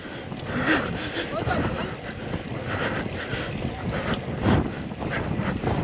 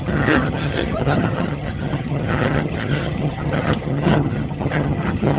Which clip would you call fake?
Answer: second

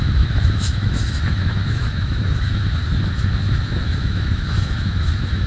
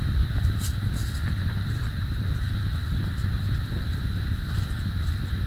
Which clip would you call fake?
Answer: first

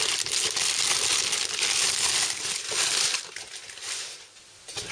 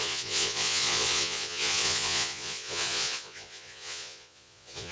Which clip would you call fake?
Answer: second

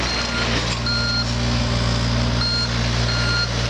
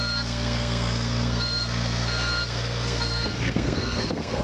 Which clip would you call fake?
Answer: second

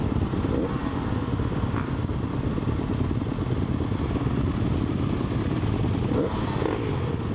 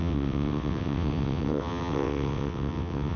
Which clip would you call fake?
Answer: second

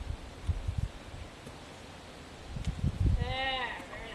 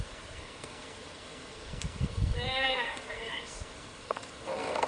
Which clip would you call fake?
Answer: second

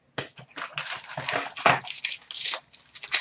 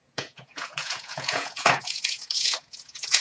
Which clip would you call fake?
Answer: second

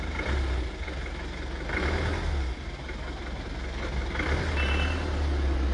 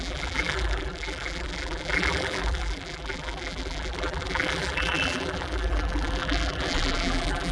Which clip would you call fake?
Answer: second